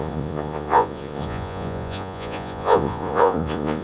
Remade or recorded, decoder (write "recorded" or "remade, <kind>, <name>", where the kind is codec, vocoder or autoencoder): remade, vocoder, Vocos